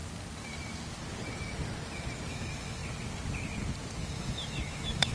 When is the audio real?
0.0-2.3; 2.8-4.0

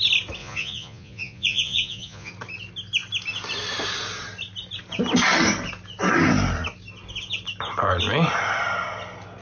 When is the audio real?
0.0-0.4; 2.3-9.4